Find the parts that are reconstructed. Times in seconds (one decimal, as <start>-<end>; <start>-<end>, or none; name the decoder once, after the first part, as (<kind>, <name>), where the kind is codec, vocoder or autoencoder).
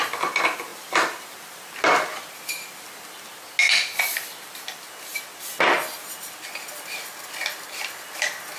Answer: none